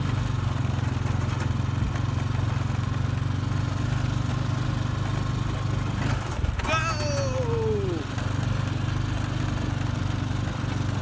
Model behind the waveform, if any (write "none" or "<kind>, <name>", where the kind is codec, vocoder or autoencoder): none